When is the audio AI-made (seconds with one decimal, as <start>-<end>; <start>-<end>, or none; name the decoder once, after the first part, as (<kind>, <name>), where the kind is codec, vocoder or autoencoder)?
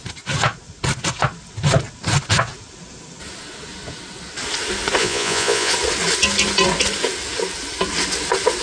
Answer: 5.0-5.7 (vocoder, Vocos)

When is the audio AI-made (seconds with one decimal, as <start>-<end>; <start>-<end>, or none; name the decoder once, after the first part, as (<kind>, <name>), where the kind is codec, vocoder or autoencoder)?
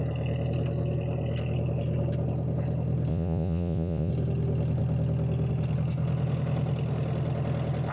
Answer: 3.1-4.1 (vocoder, Vocos)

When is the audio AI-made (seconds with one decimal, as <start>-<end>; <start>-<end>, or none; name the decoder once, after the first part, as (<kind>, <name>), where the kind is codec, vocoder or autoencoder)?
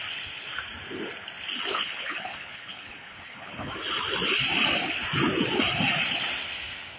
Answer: 1.7-3.7 (codec, HILCodec)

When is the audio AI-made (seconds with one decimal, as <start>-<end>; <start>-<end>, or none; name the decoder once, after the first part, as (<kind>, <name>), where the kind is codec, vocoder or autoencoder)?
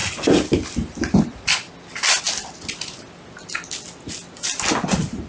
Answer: none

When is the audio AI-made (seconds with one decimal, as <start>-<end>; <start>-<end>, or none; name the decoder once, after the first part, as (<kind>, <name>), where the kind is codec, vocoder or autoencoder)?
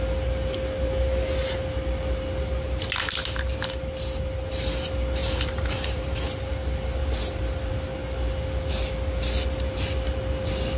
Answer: 5.2-6.5 (vocoder, BigVGAN v2)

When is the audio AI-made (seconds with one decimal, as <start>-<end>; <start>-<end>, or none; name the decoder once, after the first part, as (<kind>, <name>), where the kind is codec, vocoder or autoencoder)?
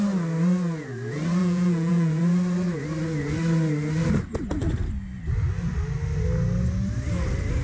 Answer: 1.4-2.2 (vocoder, Vocos)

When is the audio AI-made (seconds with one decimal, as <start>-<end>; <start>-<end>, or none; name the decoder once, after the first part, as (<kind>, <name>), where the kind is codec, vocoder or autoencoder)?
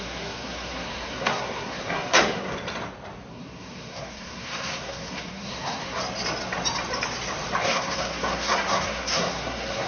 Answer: 0.0-2.5 (codec, SNAC); 3.3-6.0; 7.6-9.9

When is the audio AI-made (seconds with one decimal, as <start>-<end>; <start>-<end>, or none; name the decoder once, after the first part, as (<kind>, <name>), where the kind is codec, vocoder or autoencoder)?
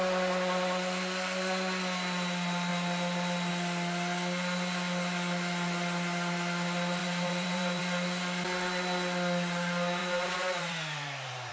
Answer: 7.0-7.8 (vocoder, BigVGAN v2); 10.0-11.5